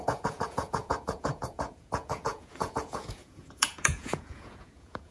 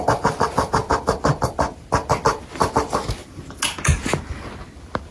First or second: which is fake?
first